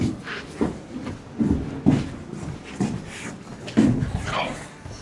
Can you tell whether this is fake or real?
real